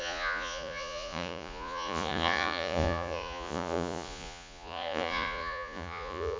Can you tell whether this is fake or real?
fake